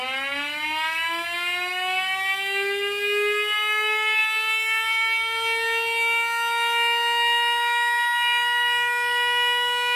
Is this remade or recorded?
recorded